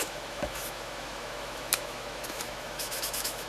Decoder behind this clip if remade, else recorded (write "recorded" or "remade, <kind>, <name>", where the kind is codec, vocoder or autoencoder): remade, autoencoder, DAC-VAE